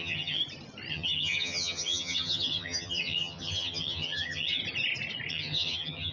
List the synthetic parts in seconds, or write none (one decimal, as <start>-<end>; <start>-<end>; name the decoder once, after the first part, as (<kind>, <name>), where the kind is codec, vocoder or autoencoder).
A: 0.0-0.4 (vocoder, HiFi-GAN); 0.9-4.6; 5.3-6.1